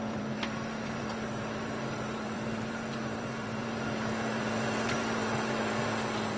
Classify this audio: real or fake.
fake